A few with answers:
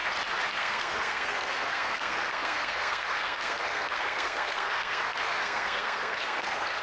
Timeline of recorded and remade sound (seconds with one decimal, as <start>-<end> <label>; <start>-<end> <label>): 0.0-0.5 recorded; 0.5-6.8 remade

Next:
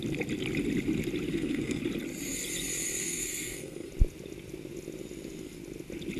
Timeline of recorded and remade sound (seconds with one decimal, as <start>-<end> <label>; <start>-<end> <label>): 0.0-1.3 recorded; 1.3-1.8 remade; 1.8-3.0 recorded; 3.0-3.9 remade; 3.9-6.2 recorded

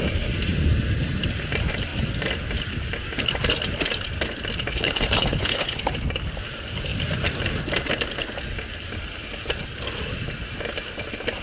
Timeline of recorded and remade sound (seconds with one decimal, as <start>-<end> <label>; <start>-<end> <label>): 0.0-4.7 recorded; 4.7-5.8 remade; 5.8-11.4 recorded

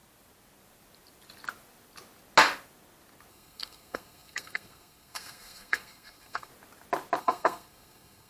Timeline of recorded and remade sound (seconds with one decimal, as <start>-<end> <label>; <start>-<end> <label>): 0.0-3.3 recorded; 3.3-6.5 remade; 6.5-7.2 recorded; 7.2-8.3 remade

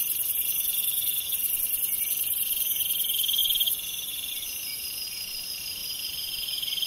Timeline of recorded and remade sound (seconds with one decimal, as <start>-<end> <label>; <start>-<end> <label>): 0.0-6.9 remade

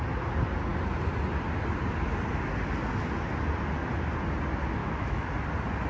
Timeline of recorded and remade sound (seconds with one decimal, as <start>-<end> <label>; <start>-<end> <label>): 0.0-4.8 recorded; 4.8-5.3 remade; 5.3-5.9 recorded

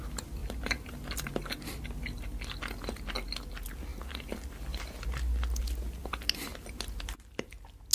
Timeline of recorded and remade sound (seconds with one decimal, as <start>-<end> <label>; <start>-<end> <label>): 0.0-7.9 recorded